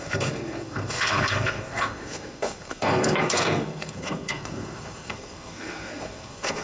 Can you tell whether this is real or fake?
fake